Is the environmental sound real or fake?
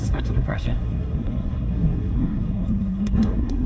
fake